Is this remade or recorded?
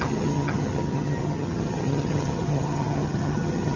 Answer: remade